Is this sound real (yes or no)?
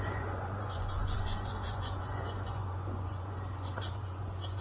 no